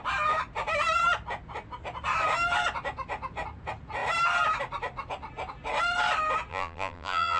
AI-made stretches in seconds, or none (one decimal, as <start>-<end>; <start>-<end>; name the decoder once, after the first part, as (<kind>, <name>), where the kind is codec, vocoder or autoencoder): 6.5-7.4 (vocoder, BigVGAN v2)